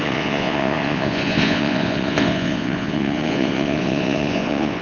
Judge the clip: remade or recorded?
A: remade